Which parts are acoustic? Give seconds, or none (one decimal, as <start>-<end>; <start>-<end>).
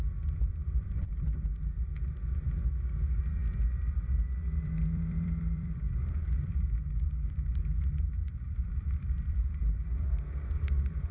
1.1-3.2; 6.5-8.5